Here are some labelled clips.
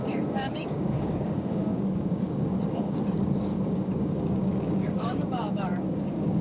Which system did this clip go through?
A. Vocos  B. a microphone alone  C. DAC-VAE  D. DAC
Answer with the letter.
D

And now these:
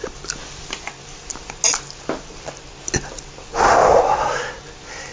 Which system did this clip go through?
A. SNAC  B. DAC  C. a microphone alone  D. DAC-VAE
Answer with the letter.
C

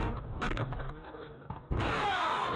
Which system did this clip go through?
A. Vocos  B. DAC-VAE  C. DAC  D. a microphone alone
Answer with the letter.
C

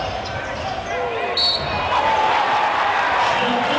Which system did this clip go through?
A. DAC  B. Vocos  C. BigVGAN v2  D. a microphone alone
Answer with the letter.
D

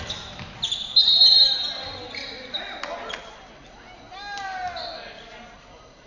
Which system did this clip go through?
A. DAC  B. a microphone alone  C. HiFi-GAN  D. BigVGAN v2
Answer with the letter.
B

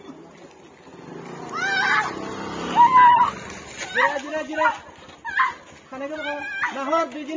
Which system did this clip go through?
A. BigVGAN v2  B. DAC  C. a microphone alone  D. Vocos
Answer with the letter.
C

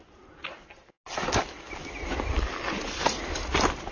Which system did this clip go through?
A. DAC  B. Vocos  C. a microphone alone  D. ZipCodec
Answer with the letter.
C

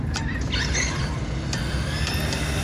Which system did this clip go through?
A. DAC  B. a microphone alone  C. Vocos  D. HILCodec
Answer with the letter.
B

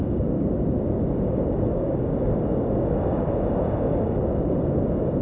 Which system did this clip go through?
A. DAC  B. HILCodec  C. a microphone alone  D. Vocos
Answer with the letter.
A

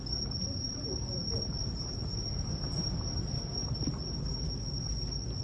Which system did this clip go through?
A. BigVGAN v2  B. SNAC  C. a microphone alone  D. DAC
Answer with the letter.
C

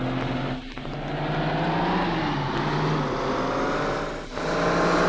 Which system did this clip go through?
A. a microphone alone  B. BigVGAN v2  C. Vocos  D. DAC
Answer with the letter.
A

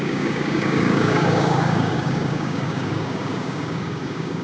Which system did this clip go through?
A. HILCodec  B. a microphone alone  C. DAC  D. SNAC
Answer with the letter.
C